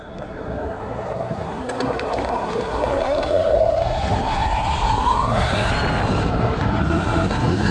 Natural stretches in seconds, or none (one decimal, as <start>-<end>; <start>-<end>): 5.7-6.2